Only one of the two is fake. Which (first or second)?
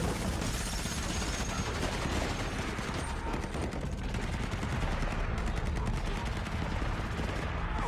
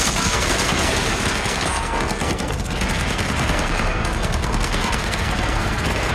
second